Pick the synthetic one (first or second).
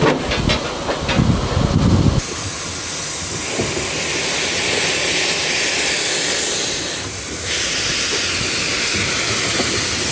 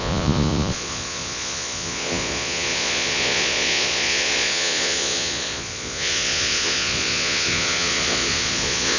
second